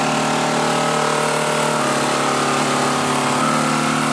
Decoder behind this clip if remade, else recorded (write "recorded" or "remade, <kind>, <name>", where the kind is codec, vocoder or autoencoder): recorded